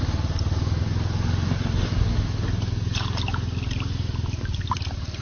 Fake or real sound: real